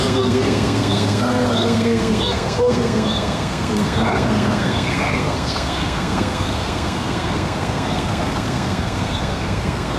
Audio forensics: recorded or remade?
remade